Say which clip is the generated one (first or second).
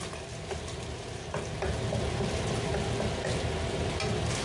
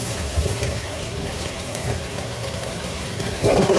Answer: second